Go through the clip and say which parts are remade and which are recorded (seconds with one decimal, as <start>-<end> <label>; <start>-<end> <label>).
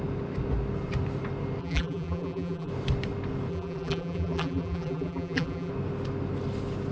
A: 0.0-1.6 recorded; 1.6-2.7 remade; 2.7-3.5 recorded; 3.5-5.7 remade; 5.7-6.9 recorded